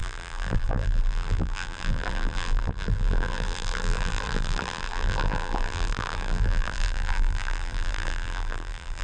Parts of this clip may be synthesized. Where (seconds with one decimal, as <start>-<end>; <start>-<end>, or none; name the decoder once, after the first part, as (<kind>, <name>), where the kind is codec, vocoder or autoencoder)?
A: 0.0-9.0 (vocoder, BigVGAN v2)